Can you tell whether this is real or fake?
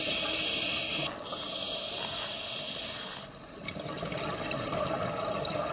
real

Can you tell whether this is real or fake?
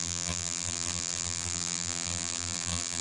fake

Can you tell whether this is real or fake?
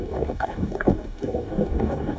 fake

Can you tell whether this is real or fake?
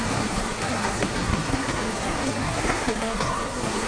fake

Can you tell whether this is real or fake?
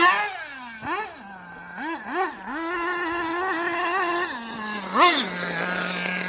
real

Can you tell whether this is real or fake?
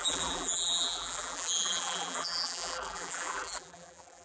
fake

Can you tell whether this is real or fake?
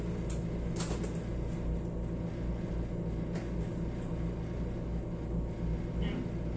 real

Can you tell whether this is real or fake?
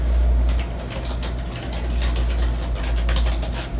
real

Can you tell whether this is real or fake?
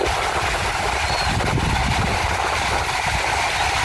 real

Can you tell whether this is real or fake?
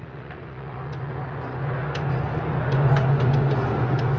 fake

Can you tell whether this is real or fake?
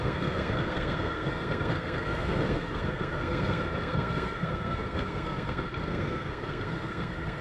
fake